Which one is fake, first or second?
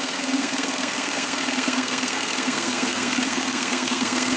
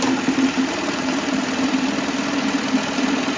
first